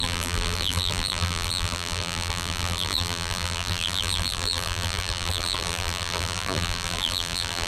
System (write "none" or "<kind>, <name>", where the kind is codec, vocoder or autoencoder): vocoder, BigVGAN v2